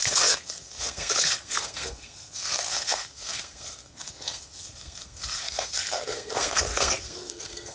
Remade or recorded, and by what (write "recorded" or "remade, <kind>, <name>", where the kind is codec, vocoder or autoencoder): remade, codec, SNAC